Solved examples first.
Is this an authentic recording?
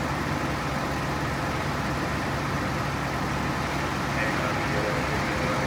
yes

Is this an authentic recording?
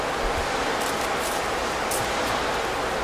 yes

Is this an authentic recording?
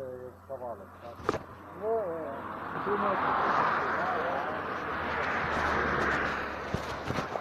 yes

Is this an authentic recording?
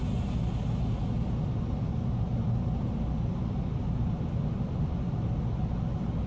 yes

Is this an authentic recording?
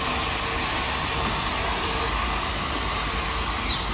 yes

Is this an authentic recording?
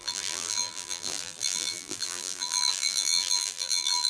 no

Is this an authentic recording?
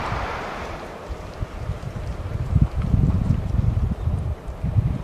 no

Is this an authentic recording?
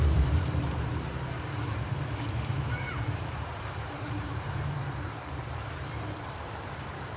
no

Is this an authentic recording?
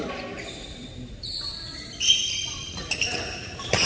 no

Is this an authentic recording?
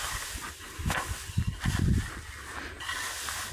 yes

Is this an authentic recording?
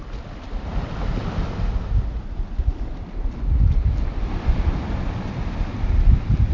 yes